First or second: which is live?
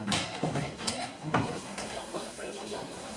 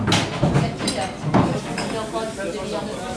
second